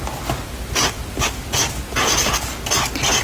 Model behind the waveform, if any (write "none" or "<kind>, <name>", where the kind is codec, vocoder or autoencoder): none